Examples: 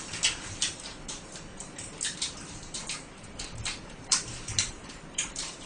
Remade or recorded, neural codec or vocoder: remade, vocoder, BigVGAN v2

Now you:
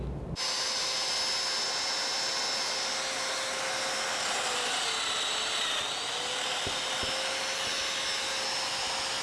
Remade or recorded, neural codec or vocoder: recorded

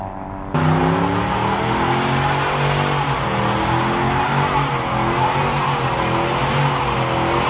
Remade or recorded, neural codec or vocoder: recorded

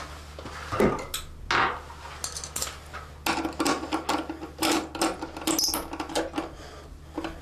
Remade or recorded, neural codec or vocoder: recorded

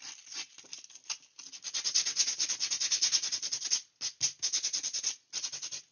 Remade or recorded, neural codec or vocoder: recorded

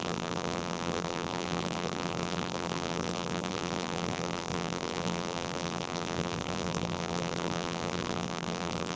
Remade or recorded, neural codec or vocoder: remade, vocoder, BigVGAN v2